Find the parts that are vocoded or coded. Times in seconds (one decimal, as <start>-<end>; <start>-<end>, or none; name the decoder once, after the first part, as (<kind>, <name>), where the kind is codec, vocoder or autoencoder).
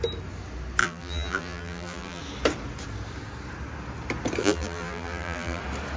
0.8-2.2 (vocoder, BigVGAN v2); 4.4-5.6